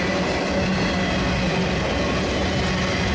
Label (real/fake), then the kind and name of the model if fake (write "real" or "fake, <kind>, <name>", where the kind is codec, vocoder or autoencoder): real